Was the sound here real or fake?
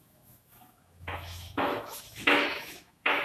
fake